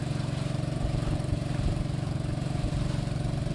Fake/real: fake